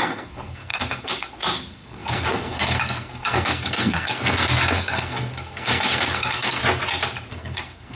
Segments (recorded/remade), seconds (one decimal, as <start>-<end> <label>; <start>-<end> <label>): 0.0-6.6 remade; 6.6-7.3 recorded; 7.3-8.0 remade